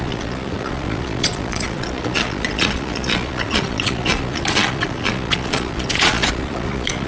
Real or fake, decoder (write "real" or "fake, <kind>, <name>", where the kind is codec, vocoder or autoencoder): fake, vocoder, Vocos